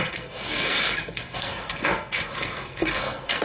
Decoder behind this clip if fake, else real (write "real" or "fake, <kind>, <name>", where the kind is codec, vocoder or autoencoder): fake, codec, SNAC